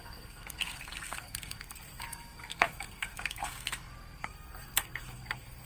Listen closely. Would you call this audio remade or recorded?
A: remade